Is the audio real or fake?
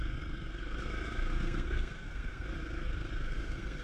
fake